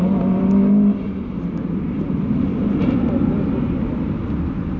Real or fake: real